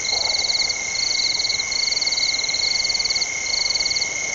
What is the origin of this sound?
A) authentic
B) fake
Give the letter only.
A